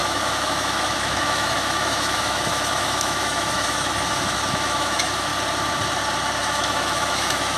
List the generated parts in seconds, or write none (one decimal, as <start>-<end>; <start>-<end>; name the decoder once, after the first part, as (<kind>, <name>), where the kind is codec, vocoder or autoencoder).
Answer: 0.0-5.3 (autoencoder, DAC-VAE); 6.4-7.6